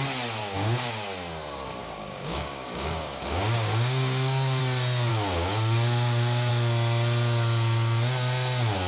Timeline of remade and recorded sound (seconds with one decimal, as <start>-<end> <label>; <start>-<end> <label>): 0.0-0.4 recorded; 0.4-0.9 remade; 0.9-1.8 recorded; 1.8-4.6 remade; 4.6-5.1 recorded; 5.1-6.5 remade; 6.5-8.9 recorded